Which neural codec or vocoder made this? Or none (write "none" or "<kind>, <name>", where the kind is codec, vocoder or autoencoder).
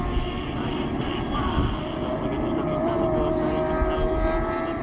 none